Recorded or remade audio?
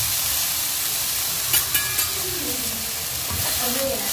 recorded